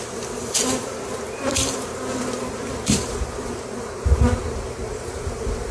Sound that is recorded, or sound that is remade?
remade